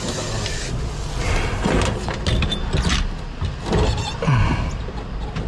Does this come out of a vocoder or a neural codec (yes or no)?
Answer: no